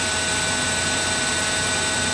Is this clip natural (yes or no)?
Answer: yes